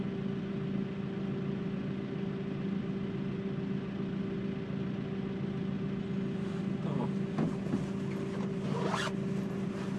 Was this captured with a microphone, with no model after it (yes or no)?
yes